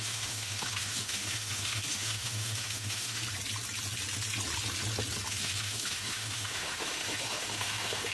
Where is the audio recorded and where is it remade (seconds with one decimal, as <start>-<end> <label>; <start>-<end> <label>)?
0.0-3.2 remade; 3.2-5.3 recorded; 5.3-8.1 remade